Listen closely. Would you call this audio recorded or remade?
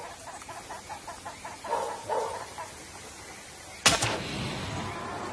recorded